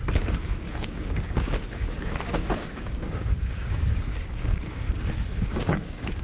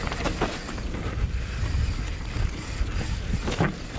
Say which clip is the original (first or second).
second